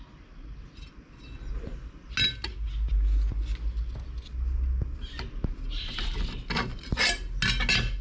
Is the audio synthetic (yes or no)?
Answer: no